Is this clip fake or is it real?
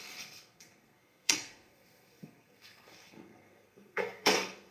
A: fake